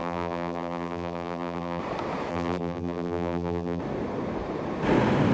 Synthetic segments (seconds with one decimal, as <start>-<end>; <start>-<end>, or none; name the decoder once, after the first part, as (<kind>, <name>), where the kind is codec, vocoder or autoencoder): 0.0-1.8 (vocoder, BigVGAN v2); 2.3-3.8